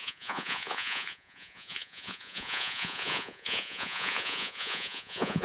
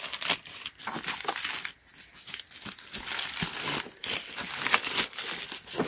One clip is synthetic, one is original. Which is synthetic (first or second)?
first